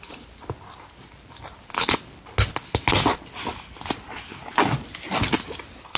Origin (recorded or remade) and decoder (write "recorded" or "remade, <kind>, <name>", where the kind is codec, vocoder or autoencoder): recorded